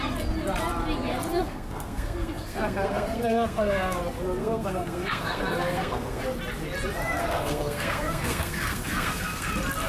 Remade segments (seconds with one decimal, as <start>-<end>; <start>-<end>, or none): 1.3-4.0; 4.4-6.2; 7.2-9.5